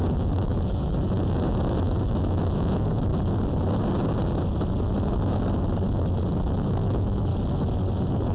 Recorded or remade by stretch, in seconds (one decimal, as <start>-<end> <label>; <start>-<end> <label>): 0.0-3.1 remade; 3.1-6.3 recorded; 6.3-7.3 remade; 7.3-7.9 recorded; 7.9-8.3 remade